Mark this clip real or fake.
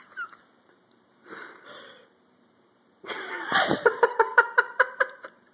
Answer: fake